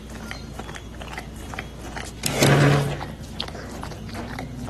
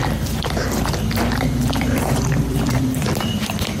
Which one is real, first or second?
first